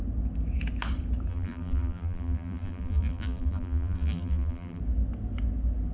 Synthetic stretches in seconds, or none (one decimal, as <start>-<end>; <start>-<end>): 1.3-4.8